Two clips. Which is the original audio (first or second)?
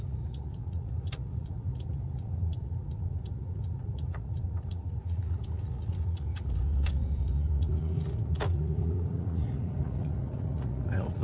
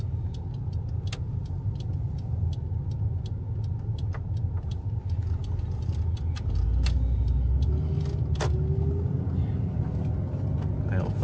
second